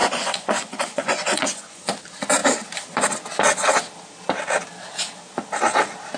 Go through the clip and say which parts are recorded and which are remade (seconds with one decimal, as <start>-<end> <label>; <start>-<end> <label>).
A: 0.0-1.8 remade; 1.8-6.2 recorded